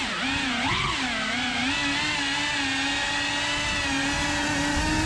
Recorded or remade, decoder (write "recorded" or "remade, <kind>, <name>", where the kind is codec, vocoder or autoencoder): recorded